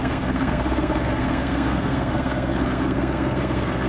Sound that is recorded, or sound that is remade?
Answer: remade